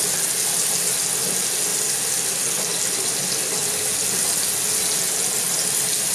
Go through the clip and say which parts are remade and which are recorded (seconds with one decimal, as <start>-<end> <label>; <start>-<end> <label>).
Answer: 0.0-6.1 recorded